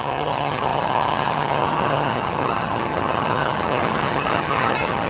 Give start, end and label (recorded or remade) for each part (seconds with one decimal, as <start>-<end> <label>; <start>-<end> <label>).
0.0-5.1 remade